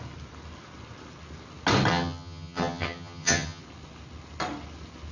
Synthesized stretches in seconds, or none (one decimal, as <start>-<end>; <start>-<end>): 1.9-3.6